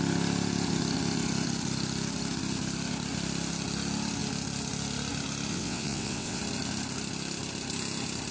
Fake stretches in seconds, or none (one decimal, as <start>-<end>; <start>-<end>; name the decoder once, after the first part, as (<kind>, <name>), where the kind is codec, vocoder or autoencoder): 5.5-6.4 (vocoder, WaveNeXt)